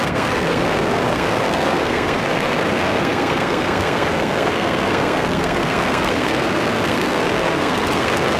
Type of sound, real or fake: fake